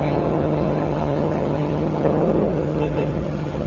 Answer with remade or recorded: remade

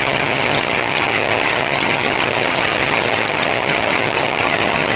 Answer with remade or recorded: remade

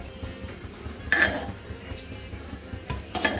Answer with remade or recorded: recorded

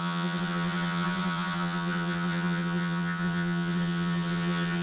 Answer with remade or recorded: remade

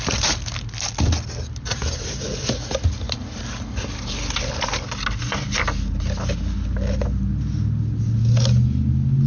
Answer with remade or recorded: recorded